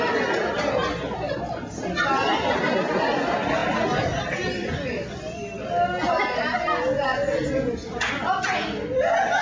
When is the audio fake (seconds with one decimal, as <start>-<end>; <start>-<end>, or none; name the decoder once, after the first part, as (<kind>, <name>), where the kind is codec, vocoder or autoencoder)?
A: none